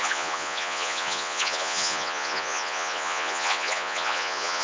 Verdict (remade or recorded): remade